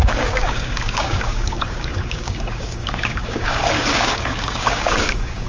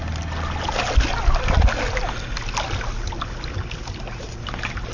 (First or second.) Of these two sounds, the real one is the second